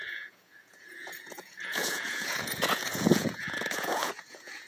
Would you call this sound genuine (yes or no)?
no